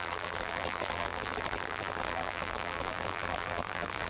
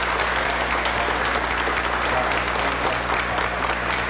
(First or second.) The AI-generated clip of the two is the first